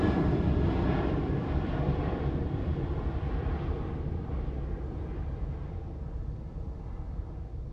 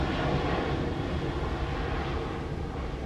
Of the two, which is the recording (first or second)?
second